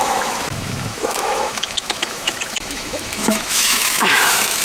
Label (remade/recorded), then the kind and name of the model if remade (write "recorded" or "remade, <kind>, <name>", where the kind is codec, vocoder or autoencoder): remade, autoencoder, DAC-VAE